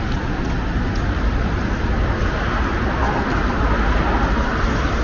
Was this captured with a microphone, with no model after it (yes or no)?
yes